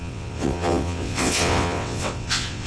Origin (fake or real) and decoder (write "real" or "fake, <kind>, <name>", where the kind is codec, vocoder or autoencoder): fake, vocoder, WaveNeXt